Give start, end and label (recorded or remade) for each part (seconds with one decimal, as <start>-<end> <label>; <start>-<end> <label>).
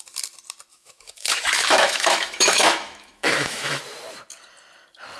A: 0.0-0.7 recorded; 0.7-3.8 remade; 3.8-5.2 recorded